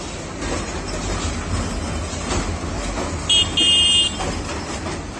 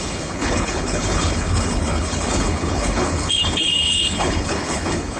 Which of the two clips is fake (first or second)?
second